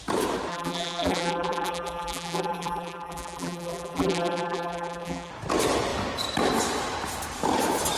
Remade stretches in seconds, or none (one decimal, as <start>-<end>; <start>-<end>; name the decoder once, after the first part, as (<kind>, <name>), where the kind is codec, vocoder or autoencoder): 0.5-5.3 (vocoder, BigVGAN v2)